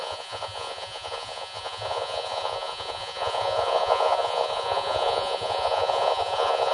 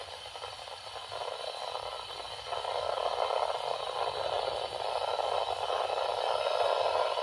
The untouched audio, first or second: second